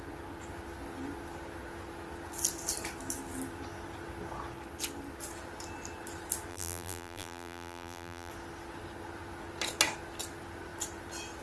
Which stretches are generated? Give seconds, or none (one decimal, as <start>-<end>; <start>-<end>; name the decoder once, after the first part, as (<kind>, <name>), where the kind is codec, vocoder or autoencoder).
6.5-8.3 (vocoder, BigVGAN v2)